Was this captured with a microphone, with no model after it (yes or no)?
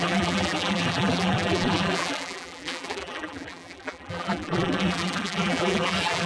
no